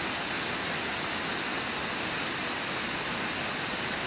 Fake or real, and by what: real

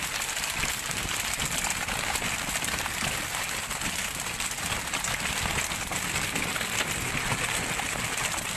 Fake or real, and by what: real